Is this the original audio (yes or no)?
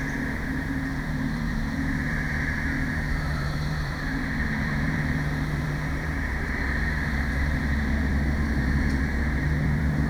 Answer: no